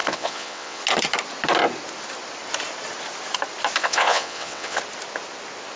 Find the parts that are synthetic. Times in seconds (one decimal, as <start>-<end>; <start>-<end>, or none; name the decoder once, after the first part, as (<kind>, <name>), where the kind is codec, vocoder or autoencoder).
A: 0.0-0.8 (vocoder, WaveNeXt); 3.8-4.8